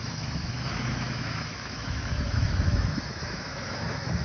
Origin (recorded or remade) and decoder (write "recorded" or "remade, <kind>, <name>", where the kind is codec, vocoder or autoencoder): remade, autoencoder, DAC-VAE